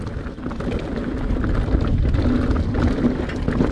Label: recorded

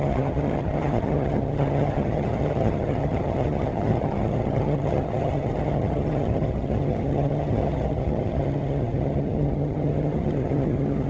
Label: remade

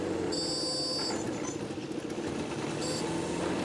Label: recorded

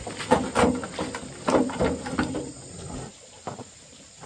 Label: recorded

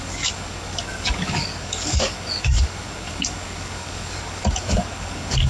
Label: remade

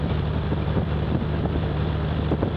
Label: remade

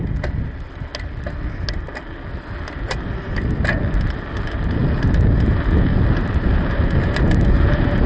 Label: recorded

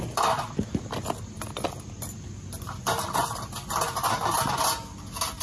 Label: recorded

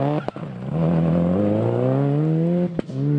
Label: recorded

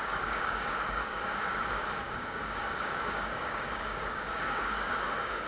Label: remade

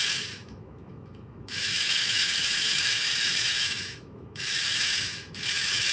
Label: remade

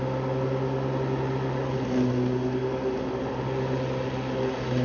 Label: recorded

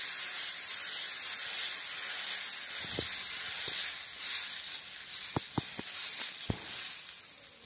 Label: recorded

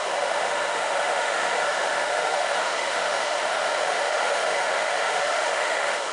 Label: remade